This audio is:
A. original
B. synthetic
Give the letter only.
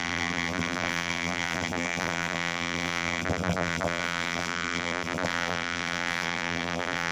B